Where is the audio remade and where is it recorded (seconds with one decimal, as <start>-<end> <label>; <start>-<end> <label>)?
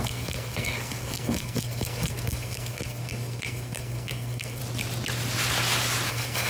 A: 0.0-4.6 remade; 4.6-6.1 recorded; 6.1-6.5 remade